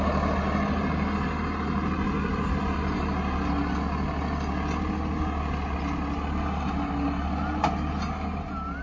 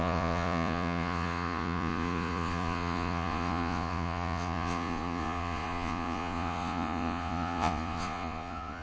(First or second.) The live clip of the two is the first